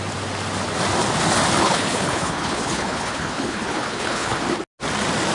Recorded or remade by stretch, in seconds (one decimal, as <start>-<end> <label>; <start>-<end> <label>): 0.0-1.6 recorded; 1.6-4.4 remade; 4.4-5.3 recorded